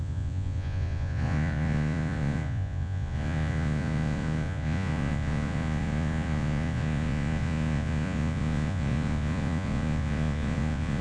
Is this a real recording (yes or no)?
no